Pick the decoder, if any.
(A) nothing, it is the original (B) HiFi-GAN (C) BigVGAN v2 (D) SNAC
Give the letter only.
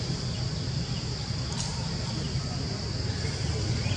A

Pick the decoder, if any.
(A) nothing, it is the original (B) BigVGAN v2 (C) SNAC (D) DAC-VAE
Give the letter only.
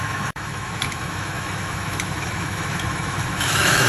D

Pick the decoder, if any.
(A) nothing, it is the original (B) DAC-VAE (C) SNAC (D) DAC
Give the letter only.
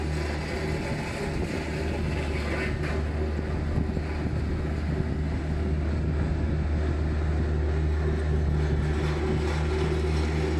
A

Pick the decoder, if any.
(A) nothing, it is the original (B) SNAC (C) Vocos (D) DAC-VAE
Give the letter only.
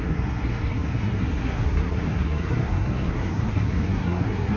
B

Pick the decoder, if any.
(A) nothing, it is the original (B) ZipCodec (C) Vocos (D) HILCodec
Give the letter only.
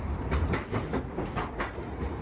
A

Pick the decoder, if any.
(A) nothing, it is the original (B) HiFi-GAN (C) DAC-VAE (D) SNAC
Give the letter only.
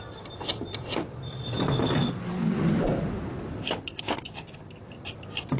A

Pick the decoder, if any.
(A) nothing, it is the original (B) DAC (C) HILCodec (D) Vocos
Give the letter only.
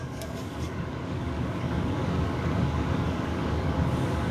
B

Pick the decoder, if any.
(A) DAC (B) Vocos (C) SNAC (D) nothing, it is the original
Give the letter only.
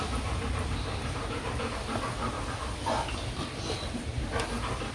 D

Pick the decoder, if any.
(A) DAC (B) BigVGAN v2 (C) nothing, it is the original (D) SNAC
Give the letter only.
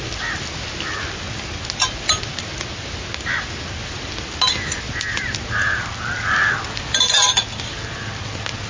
C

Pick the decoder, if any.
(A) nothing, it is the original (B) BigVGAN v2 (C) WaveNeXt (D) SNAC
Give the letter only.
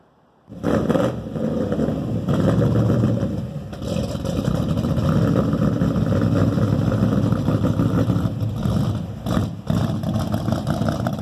B